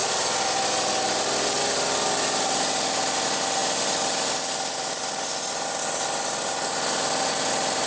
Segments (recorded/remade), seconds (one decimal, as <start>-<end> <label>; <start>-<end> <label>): 0.0-7.9 recorded